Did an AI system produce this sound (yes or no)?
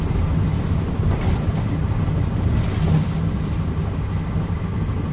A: no